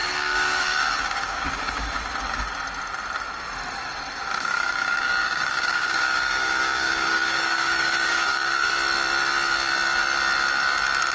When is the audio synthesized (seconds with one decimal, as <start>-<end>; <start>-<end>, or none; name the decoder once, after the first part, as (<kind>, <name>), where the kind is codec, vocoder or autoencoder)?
0.0-2.6 (codec, DAC); 4.3-8.7